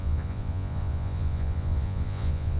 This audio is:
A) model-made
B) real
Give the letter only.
A